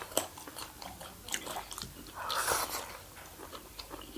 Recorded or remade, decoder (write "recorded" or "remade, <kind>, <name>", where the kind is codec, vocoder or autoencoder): recorded